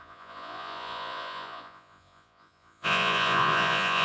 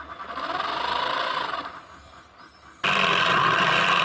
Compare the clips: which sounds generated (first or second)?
first